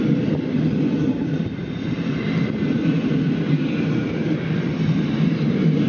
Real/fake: real